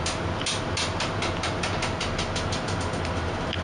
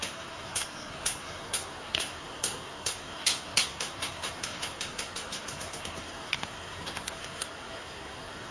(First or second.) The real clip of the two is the first